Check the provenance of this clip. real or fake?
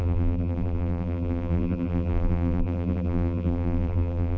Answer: fake